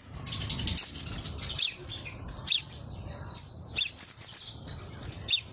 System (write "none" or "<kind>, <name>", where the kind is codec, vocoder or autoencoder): vocoder, BigVGAN v2